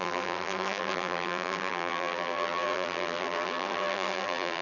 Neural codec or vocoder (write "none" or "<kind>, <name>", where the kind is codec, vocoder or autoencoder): vocoder, BigVGAN v2